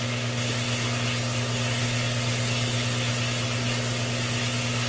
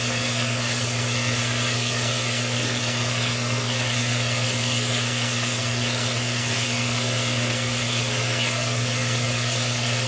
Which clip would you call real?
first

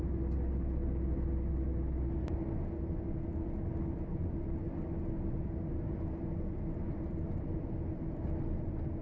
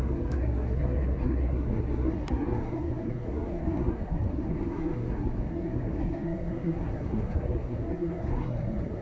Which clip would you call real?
first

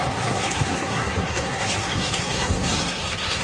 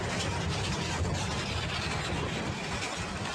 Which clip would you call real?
second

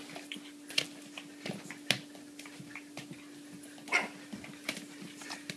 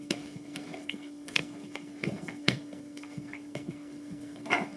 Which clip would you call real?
first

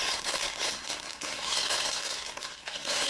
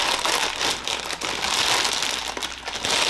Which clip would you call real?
second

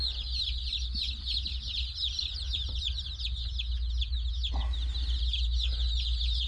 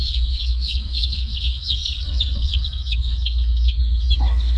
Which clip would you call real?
first